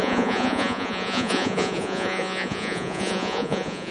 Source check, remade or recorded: remade